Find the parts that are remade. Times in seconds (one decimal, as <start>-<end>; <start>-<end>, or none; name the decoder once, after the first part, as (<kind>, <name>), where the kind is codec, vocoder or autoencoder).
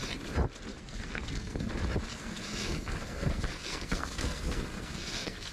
0.7-1.7 (codec, SNAC); 2.1-5.5